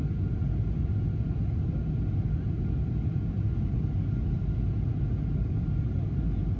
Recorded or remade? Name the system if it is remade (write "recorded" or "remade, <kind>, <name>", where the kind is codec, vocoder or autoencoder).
recorded